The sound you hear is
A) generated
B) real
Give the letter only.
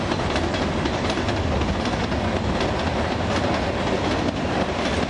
B